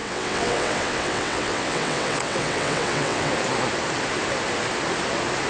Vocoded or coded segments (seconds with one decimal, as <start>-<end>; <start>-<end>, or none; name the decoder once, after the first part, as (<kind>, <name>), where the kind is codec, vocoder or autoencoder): 0.0-3.3 (vocoder, WaveNeXt)